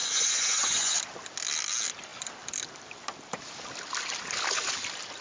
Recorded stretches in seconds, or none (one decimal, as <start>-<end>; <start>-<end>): 1.0-5.2